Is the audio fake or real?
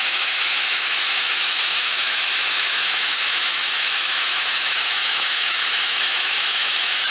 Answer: fake